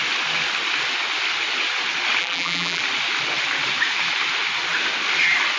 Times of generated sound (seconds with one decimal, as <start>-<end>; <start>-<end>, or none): 2.2-2.8